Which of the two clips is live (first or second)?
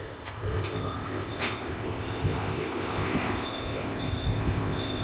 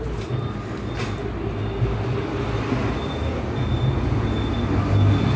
second